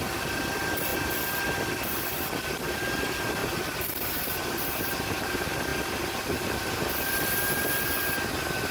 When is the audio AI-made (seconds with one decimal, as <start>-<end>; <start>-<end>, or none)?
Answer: 3.4-5.0